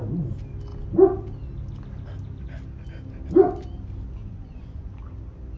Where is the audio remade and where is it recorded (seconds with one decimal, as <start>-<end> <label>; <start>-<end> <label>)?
0.0-4.2 recorded; 4.2-4.9 remade; 4.9-5.6 recorded